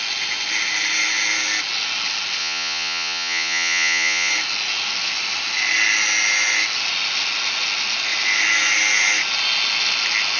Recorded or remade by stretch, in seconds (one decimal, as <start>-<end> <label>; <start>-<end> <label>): 0.0-2.4 recorded; 2.4-4.3 remade; 4.3-10.4 recorded